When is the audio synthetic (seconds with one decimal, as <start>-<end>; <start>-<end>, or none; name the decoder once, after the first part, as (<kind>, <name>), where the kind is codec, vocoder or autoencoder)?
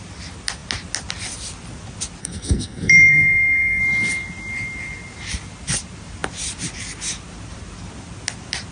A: 2.2-3.8 (codec, SNAC)